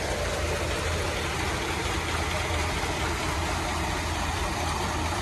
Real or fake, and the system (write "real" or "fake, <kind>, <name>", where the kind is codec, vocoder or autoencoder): real